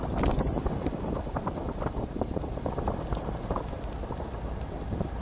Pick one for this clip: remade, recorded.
recorded